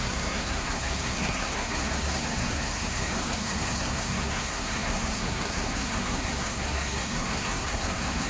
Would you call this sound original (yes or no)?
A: no